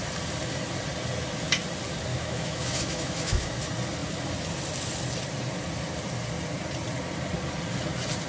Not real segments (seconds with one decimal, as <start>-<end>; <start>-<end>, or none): 2.1-3.6